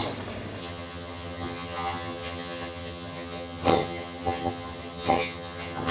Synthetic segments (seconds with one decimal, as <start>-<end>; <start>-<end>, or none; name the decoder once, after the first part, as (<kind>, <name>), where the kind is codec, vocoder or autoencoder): 0.6-5.9 (vocoder, HiFi-GAN)